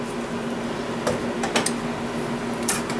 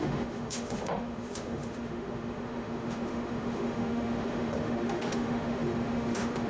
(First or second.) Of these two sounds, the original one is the first